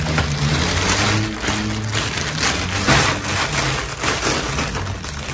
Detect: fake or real real